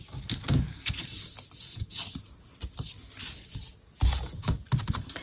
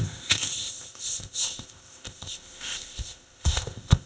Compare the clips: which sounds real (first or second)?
first